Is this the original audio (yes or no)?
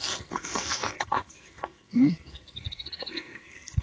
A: no